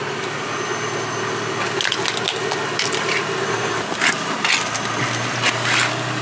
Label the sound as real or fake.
real